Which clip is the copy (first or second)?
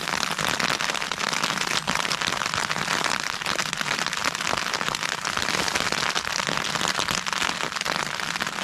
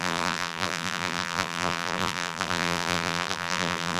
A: second